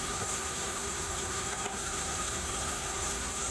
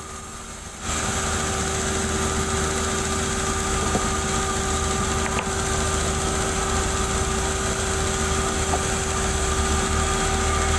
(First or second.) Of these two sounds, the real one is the second